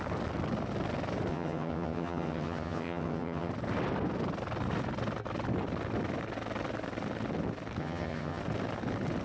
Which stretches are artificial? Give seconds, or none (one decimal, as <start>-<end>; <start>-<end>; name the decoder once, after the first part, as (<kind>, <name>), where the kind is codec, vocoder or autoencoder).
1.3-3.5 (vocoder, HiFi-GAN); 7.8-8.4